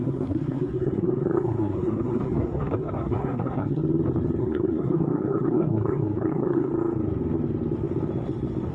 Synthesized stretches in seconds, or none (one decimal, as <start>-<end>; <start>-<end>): 0.0-3.8; 4.4-6.7